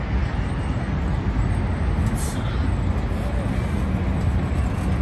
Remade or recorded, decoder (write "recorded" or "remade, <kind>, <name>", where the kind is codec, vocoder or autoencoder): recorded